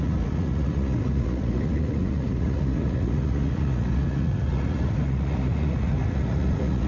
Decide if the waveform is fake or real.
fake